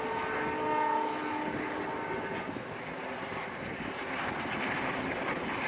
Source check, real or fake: real